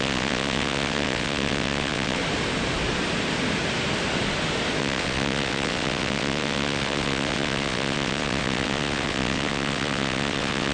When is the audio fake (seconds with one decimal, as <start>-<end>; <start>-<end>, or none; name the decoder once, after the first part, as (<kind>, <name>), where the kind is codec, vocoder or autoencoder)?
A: 0.0-2.2 (vocoder, WaveNeXt); 4.8-10.7

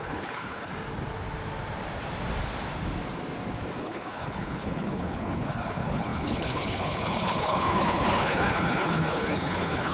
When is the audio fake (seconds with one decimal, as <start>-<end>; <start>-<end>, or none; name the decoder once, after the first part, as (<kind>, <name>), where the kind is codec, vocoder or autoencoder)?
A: 0.0-0.7 (codec, HILCodec); 3.8-9.9

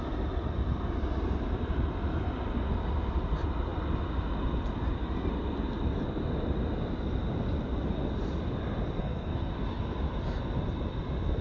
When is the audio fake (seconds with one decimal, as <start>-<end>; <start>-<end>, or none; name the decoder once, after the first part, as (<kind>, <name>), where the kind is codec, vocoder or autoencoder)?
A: 9.0-9.5 (codec, SNAC)

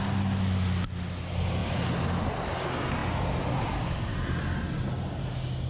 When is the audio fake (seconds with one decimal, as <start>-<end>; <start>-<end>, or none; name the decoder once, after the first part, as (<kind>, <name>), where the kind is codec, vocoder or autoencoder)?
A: none

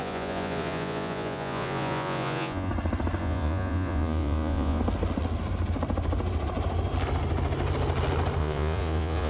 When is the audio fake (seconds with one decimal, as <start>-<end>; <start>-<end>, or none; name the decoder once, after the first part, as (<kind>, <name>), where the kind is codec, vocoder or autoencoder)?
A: 0.0-2.7 (vocoder, Vocos); 3.2-4.8; 8.4-9.3